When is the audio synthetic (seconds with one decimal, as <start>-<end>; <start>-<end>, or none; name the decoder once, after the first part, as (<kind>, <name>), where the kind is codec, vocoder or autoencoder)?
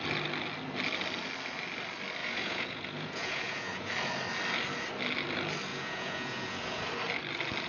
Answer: 2.2-3.9 (vocoder, Vocos); 5.7-6.9